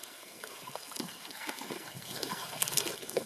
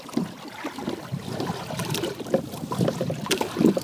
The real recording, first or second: second